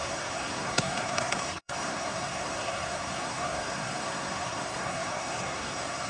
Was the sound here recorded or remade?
remade